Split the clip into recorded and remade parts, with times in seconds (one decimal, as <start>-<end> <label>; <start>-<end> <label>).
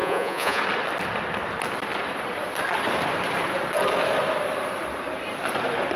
0.0-0.6 remade; 0.6-6.0 recorded